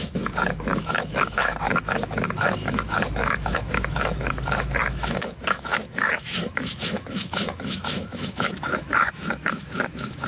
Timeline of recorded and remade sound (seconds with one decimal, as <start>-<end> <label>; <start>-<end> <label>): 0.0-10.3 remade